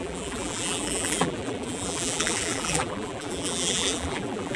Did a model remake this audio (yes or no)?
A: yes